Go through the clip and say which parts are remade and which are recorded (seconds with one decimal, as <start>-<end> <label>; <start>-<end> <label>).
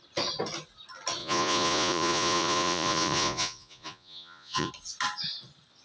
0.0-1.2 recorded; 1.2-4.7 remade; 4.7-5.8 recorded